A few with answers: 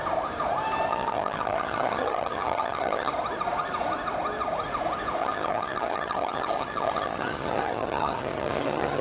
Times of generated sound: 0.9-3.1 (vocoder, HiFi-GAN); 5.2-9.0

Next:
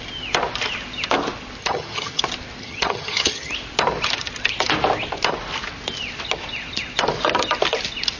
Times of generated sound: 1.6-2.2 (vocoder, HiFi-GAN); 2.6-3.5

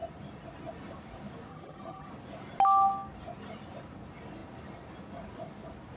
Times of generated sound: 1.5-2.1 (vocoder, HiFi-GAN)

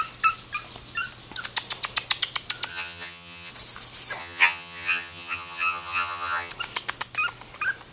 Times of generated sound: 2.7-3.5 (vocoder, HiFi-GAN); 4.2-6.5

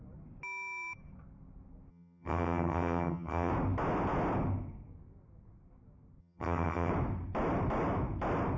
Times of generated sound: 1.9-3.5 (vocoder, HiFi-GAN); 6.2-6.9

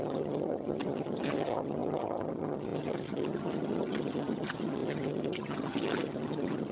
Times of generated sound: 0.0-6.7 (vocoder, HiFi-GAN)

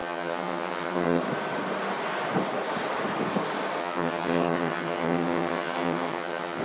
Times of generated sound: 0.0-1.2 (vocoder, HiFi-GAN); 3.8-6.6